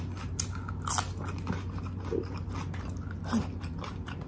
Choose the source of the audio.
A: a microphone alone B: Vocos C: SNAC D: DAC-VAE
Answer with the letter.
A